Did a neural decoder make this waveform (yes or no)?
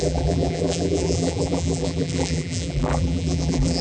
yes